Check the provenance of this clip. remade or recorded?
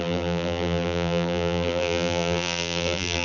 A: remade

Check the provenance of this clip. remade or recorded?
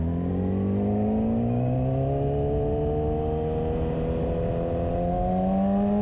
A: recorded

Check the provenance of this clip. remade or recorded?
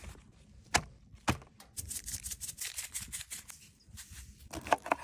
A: recorded